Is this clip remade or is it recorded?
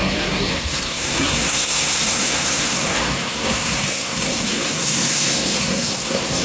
remade